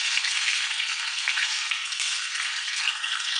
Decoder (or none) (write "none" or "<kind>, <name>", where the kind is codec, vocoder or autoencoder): codec, SNAC